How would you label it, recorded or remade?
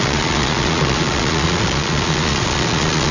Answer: remade